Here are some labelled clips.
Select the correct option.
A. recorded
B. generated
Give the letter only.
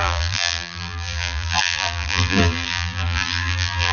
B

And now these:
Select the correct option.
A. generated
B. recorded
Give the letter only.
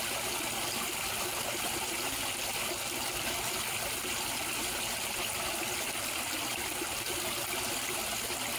B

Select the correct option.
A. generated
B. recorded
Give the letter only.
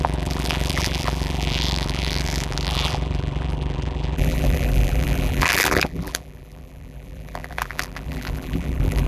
A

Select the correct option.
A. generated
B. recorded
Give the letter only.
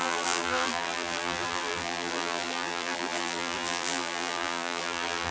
A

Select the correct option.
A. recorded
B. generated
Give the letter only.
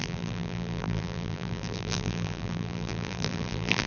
B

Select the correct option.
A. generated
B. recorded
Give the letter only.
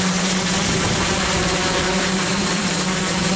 A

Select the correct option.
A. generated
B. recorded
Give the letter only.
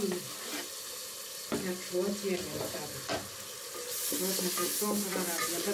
B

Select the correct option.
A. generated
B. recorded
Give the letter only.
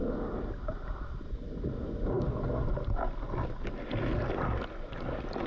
B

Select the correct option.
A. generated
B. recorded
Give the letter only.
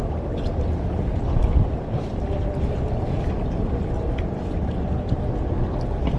B